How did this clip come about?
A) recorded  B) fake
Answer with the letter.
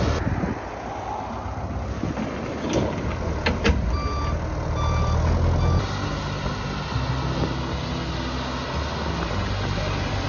A